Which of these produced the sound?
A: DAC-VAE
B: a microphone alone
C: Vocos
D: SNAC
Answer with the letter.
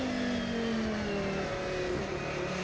B